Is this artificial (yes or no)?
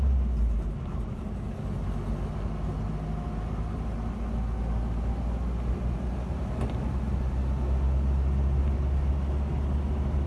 no